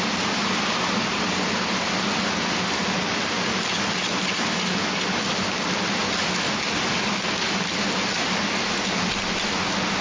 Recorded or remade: recorded